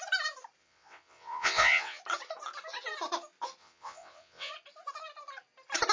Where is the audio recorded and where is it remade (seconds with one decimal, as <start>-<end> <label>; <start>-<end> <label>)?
0.0-0.6 recorded; 0.6-2.0 remade; 2.0-3.6 recorded; 3.6-4.5 remade; 4.5-5.9 recorded